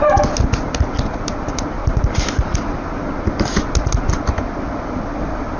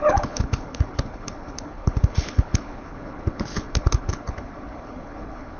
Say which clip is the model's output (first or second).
second